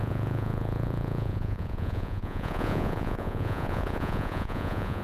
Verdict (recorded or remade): remade